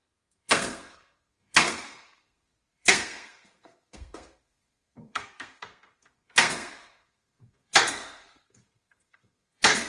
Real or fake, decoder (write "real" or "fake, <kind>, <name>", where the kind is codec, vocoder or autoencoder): fake, codec, SNAC